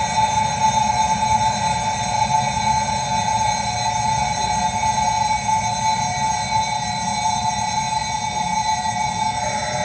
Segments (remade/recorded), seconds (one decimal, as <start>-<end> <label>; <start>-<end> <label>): 0.0-9.8 recorded